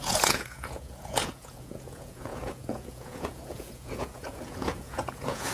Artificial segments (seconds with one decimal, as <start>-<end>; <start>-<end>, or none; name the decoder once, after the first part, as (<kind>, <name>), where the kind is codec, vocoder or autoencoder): 0.0-5.5 (vocoder, Vocos)